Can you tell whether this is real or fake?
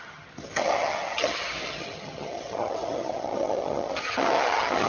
fake